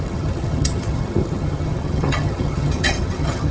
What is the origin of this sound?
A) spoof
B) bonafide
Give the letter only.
A